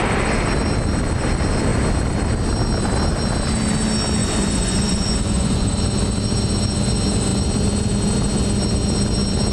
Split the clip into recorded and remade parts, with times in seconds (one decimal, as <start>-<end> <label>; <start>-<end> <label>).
0.0-4.2 recorded; 4.2-5.7 remade; 5.7-9.5 recorded